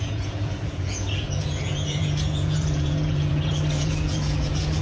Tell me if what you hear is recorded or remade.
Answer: remade